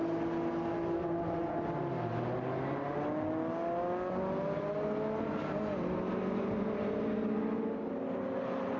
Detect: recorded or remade recorded